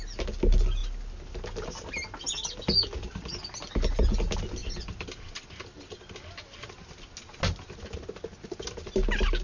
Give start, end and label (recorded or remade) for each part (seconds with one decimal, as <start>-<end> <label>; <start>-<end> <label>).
0.0-9.4 recorded